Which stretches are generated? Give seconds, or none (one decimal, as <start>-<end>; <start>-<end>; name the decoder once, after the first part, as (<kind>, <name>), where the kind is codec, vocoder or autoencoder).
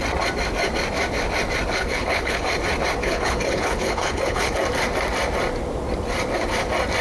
1.7-2.5 (codec, HILCodec); 3.0-4.5